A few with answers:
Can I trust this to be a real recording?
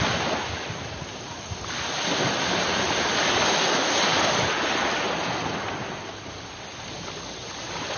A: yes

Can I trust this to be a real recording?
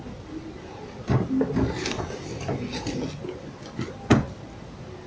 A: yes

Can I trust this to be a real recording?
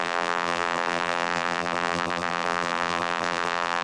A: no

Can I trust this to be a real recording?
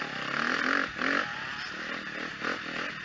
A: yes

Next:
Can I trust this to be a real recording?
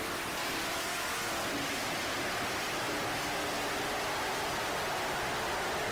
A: yes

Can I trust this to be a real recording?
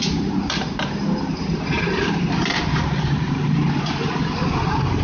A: no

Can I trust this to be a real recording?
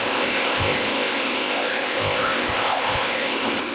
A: no